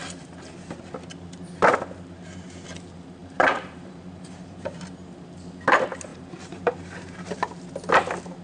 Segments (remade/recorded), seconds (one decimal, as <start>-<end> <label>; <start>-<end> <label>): 0.0-3.2 recorded; 3.2-4.8 remade; 4.8-6.1 recorded; 6.1-7.6 remade; 7.6-8.4 recorded